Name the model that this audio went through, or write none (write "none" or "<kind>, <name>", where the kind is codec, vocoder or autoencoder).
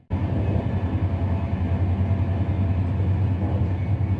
none